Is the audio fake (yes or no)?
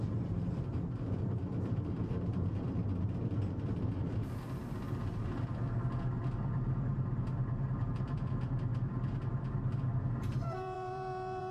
yes